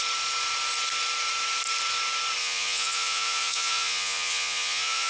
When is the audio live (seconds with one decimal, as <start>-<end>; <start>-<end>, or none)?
0.0-2.4